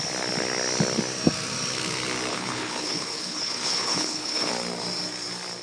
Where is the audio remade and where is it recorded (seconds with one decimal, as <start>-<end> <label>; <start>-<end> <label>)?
0.0-2.3 recorded; 2.3-4.5 remade; 4.5-5.6 recorded